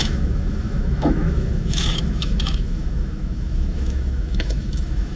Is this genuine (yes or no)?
no